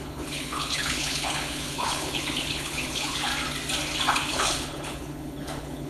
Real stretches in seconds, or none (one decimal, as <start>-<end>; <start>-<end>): 3.3-4.1